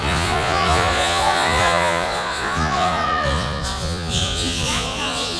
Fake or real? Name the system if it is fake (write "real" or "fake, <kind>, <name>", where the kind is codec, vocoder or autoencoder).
fake, vocoder, Vocos